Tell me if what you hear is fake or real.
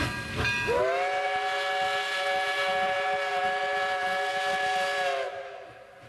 real